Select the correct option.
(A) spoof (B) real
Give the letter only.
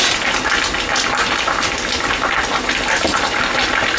B